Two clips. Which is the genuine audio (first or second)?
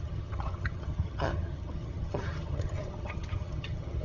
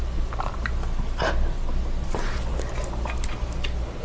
second